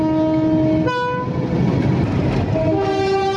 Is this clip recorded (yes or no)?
yes